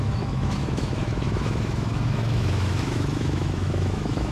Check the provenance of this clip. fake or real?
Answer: fake